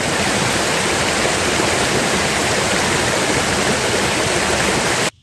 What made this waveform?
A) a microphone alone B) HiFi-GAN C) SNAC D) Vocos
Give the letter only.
A